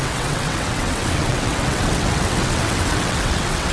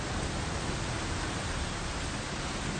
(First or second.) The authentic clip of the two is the second